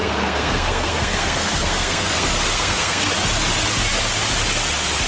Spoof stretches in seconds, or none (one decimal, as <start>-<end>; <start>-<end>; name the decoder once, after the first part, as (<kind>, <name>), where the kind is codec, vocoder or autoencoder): 0.0-3.1 (codec, SNAC)